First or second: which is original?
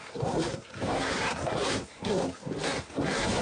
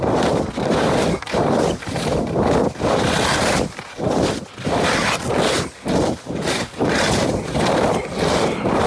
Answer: second